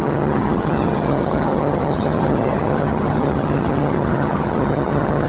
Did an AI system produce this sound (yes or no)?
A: yes